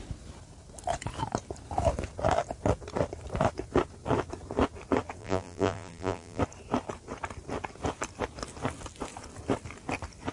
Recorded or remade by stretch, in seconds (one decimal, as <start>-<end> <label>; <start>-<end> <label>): 0.0-5.2 recorded; 5.2-6.4 remade; 6.4-10.3 recorded